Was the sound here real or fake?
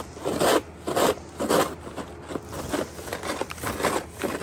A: real